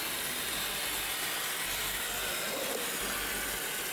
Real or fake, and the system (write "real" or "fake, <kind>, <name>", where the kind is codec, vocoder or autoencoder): real